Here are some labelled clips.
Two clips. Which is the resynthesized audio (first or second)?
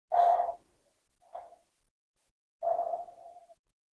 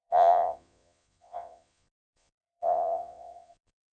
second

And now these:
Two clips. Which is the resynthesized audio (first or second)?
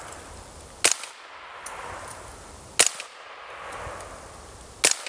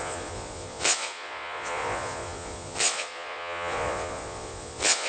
second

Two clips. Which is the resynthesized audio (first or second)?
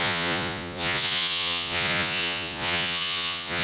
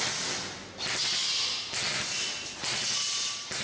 first